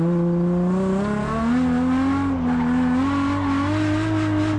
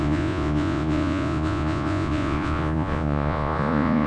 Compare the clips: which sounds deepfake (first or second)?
second